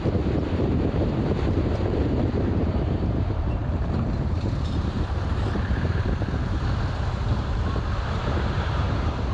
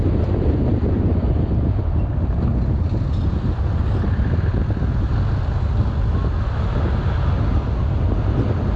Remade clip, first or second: first